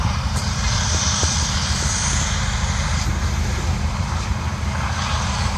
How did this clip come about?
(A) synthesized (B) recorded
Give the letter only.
A